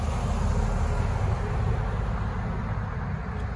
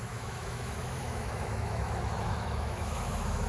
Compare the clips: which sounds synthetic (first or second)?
second